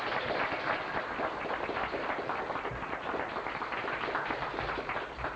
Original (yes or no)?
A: yes